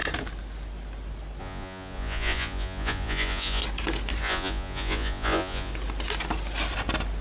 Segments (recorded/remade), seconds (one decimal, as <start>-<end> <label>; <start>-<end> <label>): 0.0-1.4 recorded; 1.4-3.6 remade; 3.6-4.2 recorded; 4.2-5.7 remade; 5.7-7.2 recorded